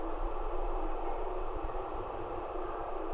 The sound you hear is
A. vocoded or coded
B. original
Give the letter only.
A